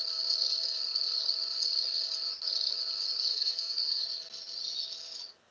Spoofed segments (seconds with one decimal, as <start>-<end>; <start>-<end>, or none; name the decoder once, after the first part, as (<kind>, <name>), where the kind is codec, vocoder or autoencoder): 3.3-4.0 (codec, SNAC)